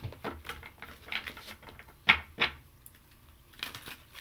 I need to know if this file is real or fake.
real